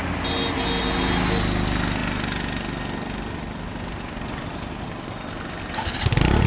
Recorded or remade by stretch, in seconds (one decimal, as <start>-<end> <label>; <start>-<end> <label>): 0.0-6.5 recorded